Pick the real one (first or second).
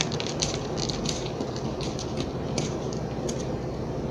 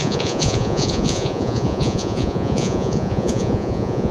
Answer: first